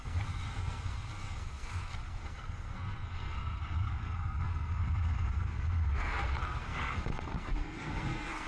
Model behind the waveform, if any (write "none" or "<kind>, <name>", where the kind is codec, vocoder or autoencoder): codec, SNAC